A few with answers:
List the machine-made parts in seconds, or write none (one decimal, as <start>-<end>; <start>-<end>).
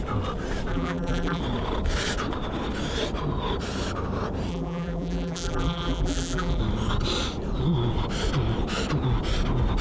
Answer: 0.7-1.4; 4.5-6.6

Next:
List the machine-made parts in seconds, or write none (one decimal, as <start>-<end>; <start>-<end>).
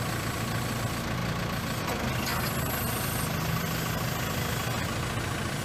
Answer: none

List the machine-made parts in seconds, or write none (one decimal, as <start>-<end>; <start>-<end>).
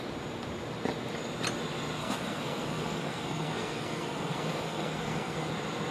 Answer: 2.0-5.5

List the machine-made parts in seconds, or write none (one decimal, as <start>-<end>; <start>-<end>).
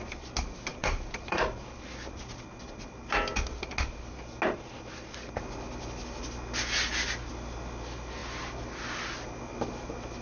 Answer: 0.7-1.4